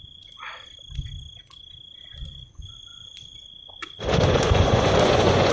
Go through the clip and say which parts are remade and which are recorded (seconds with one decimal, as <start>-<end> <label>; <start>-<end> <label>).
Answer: 0.0-0.5 remade; 0.5-2.0 recorded; 2.0-5.5 remade